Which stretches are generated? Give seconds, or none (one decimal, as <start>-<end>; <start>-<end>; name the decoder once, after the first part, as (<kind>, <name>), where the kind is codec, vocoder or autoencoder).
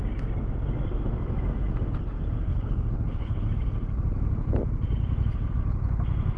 2.5-3.5 (codec, HILCodec)